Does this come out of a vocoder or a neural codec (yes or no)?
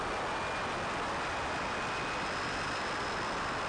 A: no